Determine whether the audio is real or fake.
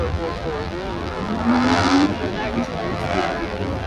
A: fake